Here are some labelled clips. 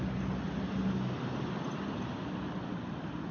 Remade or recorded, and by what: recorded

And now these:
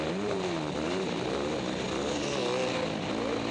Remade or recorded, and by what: recorded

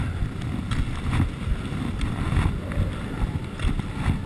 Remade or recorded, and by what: recorded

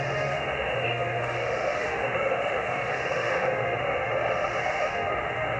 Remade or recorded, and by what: remade, autoencoder, DAC-VAE